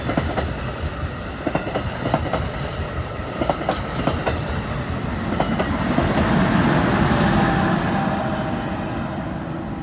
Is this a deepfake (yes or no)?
no